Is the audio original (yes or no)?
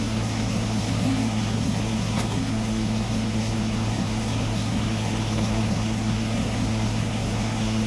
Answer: no